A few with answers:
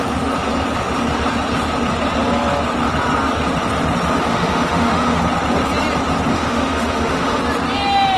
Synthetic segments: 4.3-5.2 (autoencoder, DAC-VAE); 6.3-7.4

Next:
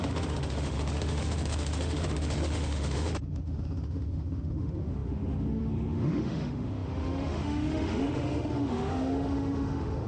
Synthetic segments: 0.0-10.1 (autoencoder, DAC-VAE)

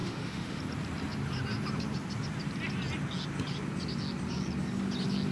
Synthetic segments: 0.0-0.6 (autoencoder, DAC-VAE)

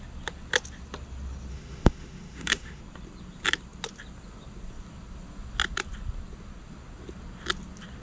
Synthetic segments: 1.5-2.8 (autoencoder, DAC-VAE)

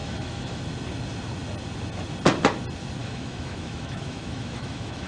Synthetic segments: 0.0-0.6 (autoencoder, DAC-VAE); 3.0-5.1

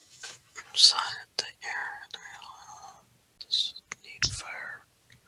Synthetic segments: 0.0-0.6 (autoencoder, DAC-VAE)

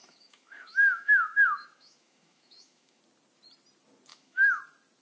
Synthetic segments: 0.0-3.0 (autoencoder, DAC-VAE); 4.1-4.6